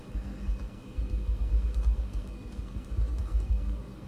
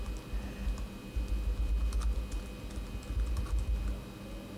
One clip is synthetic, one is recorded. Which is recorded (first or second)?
second